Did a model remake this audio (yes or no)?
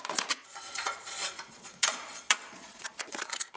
yes